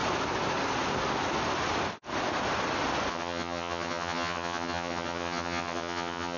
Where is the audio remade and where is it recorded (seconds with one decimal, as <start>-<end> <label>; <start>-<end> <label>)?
0.0-3.1 recorded; 3.1-6.4 remade